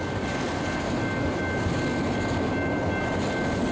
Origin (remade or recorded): recorded